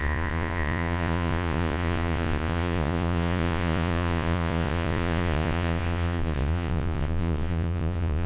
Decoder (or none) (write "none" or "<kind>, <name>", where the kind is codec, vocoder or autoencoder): vocoder, Vocos